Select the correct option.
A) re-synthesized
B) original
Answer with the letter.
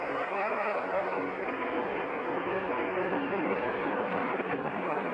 A